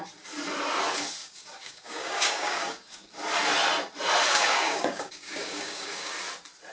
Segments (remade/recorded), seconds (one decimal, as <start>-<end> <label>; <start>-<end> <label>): 0.0-1.2 recorded; 1.2-3.1 remade; 3.1-4.3 recorded; 4.3-6.2 remade; 6.2-6.7 recorded